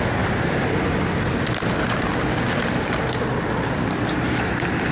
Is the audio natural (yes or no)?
yes